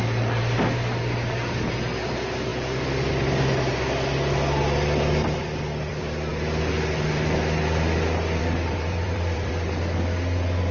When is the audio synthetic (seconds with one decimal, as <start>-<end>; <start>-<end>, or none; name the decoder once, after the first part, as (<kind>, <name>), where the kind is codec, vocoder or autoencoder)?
5.4-6.3 (vocoder, BigVGAN v2); 8.4-9.5